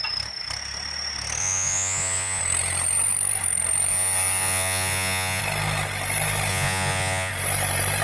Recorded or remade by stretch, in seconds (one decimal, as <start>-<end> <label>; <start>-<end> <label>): 0.0-1.4 recorded; 1.4-2.4 remade; 2.4-3.9 recorded; 3.9-5.4 remade; 5.4-6.5 recorded; 6.5-7.3 remade; 7.3-8.0 recorded